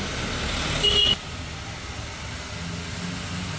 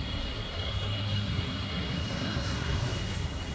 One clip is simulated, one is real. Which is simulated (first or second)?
second